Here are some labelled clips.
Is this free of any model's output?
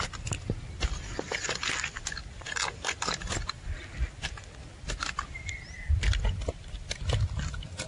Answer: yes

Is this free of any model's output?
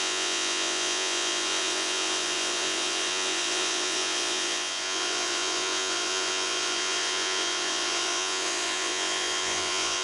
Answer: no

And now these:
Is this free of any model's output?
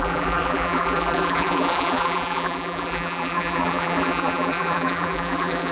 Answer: no